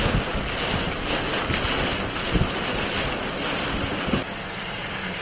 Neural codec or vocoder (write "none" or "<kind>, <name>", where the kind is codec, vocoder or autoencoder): none